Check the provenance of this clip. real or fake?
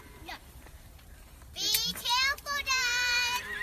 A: fake